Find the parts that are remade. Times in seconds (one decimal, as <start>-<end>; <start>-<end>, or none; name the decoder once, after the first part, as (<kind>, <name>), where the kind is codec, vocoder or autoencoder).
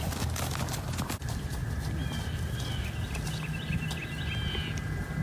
none